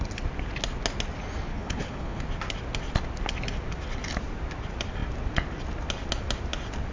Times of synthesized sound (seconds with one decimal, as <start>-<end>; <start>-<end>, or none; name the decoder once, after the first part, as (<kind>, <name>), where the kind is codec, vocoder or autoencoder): 1.5-2.2 (codec, HILCodec)